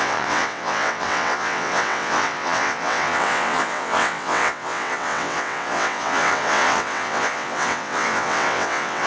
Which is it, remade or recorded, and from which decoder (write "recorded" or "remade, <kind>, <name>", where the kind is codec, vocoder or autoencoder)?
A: remade, vocoder, WaveNeXt